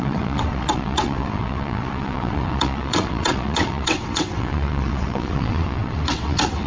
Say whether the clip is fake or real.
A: fake